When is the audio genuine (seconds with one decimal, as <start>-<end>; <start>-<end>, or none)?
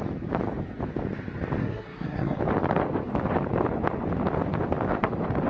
0.0-1.6; 2.4-5.5